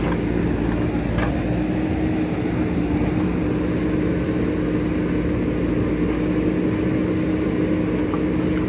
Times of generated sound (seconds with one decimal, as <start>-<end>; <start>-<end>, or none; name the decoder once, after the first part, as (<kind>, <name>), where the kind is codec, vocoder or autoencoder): none